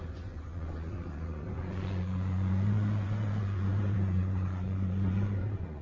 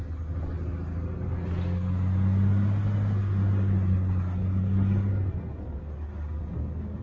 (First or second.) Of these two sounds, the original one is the second